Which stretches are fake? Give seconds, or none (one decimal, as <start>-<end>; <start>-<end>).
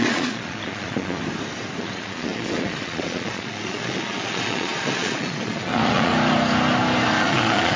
0.0-1.2; 1.8-6.1; 7.2-7.8